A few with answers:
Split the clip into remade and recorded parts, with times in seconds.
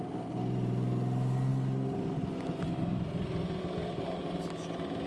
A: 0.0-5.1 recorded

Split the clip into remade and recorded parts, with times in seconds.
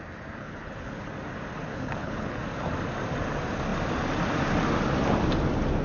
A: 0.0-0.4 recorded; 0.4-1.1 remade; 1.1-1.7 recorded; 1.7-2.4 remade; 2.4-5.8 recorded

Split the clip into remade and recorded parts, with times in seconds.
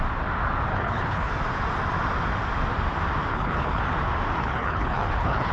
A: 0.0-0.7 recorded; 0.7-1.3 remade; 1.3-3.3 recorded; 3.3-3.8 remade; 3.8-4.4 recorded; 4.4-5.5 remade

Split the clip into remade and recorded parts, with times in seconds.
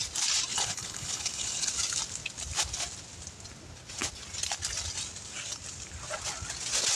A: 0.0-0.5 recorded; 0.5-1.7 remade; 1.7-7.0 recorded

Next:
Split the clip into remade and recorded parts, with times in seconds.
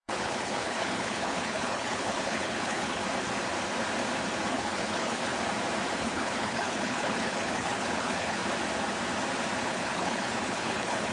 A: 0.0-3.0 remade; 3.0-4.5 recorded; 4.5-5.3 remade; 5.3-6.0 recorded; 6.0-8.4 remade; 8.4-9.6 recorded; 9.6-11.1 remade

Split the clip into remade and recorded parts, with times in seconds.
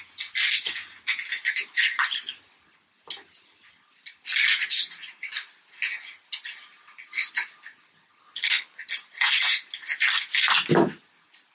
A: 0.0-8.2 recorded; 8.2-8.8 remade; 8.8-11.5 recorded